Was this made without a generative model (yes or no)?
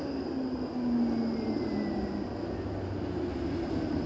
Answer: yes